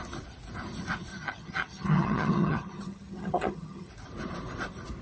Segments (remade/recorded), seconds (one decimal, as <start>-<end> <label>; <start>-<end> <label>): 0.0-1.1 recorded; 1.1-3.9 remade; 3.9-5.0 recorded